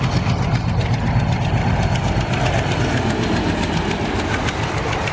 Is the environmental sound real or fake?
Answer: real